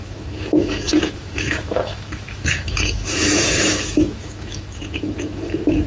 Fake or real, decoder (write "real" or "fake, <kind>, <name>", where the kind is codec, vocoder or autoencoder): fake, autoencoder, DAC-VAE